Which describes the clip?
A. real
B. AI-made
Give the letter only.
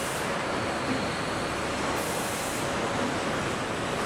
A